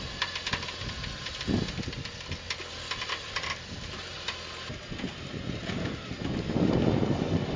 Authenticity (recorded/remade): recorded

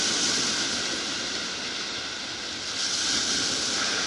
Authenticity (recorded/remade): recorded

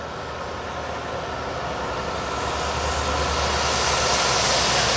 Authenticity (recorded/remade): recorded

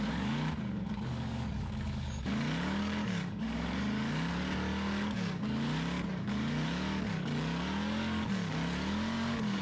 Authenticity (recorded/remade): remade